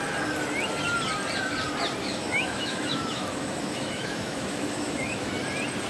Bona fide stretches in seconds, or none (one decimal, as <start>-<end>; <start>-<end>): 0.0-2.0; 5.3-5.9